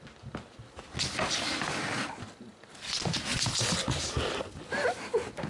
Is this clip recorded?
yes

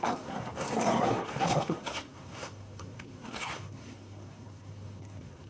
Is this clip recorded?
no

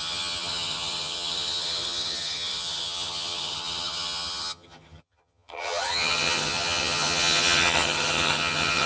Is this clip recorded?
no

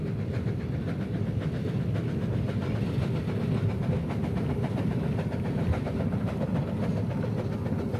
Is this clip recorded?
yes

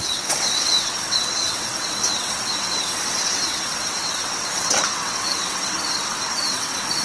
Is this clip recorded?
no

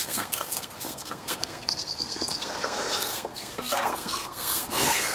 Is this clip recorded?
no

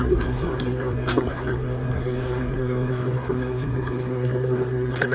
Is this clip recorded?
no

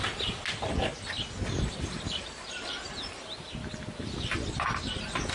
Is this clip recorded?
yes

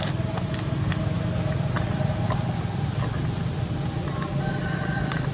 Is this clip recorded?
yes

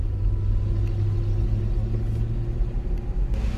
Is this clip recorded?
yes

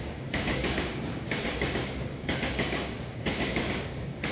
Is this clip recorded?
no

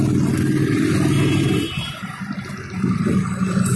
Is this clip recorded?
yes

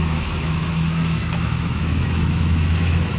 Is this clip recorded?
no